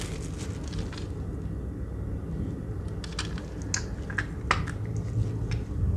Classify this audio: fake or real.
real